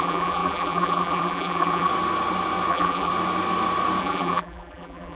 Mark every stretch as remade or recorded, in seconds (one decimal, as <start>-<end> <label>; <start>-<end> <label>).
0.0-1.9 remade; 1.9-2.7 recorded; 2.7-3.1 remade; 3.1-4.0 recorded; 4.0-5.2 remade

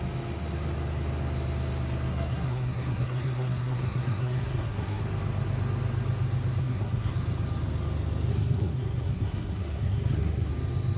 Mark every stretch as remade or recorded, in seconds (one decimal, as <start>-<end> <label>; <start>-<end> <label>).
0.0-2.1 recorded; 2.1-5.0 remade; 5.0-6.6 recorded; 6.6-7.1 remade; 7.1-8.3 recorded; 8.3-10.5 remade; 10.5-11.0 recorded

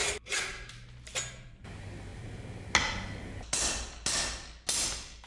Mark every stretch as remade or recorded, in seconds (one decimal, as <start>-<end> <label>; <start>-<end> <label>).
0.0-5.3 recorded